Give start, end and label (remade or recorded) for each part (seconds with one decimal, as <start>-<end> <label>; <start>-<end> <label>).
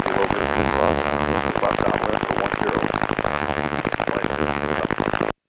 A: 0.0-0.4 recorded; 0.4-1.5 remade; 1.5-3.3 recorded; 3.3-3.8 remade; 3.8-4.3 recorded; 4.3-4.8 remade; 4.8-5.5 recorded